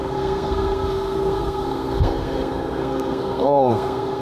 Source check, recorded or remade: remade